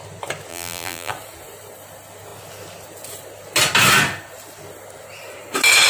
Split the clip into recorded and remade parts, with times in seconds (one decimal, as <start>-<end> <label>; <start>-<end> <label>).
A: 0.0-0.5 recorded; 0.5-1.1 remade; 1.1-5.9 recorded